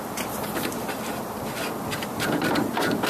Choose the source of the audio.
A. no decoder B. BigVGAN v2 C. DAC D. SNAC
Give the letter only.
B